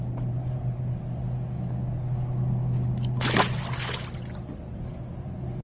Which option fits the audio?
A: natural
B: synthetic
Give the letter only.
A